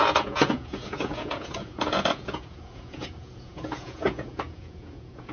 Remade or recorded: remade